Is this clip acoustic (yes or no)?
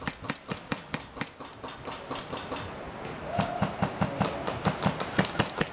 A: yes